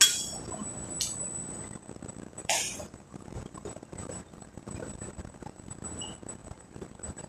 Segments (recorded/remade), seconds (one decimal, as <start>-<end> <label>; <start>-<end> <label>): 0.0-2.4 recorded; 2.4-5.7 remade; 5.7-6.4 recorded; 6.4-7.3 remade